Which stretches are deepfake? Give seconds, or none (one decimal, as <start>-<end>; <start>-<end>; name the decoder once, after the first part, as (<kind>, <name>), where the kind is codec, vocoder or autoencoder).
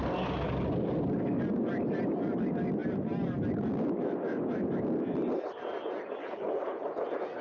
6.2-6.9 (codec, HILCodec)